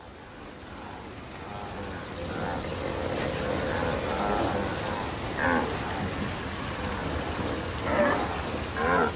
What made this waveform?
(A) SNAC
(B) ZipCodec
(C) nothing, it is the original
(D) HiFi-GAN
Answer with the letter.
C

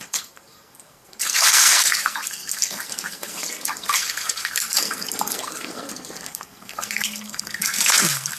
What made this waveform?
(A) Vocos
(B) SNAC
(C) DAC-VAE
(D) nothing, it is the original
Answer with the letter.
B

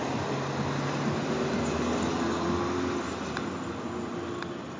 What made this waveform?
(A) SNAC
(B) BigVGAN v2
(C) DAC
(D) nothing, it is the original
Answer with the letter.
D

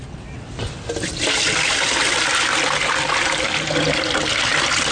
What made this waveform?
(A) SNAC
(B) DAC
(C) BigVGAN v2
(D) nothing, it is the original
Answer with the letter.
D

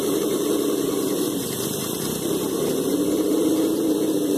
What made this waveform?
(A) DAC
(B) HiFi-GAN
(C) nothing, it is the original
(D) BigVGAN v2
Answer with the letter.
D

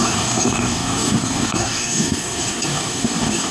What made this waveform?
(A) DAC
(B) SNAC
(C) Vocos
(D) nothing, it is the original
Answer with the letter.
A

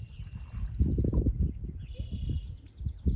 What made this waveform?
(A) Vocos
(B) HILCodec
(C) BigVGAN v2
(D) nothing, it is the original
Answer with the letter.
D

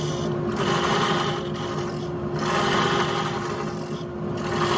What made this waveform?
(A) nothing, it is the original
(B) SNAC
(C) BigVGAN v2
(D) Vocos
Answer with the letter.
A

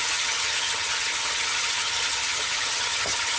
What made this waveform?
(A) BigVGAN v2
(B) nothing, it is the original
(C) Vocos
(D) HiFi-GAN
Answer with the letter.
D